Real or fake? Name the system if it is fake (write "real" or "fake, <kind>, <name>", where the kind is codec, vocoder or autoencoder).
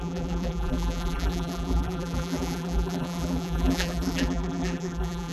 fake, vocoder, BigVGAN v2